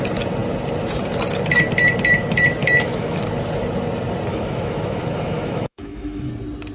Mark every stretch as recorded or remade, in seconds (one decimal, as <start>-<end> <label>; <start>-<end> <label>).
0.0-2.6 recorded; 2.6-3.2 remade; 3.2-4.3 recorded; 4.3-6.3 remade; 6.3-6.7 recorded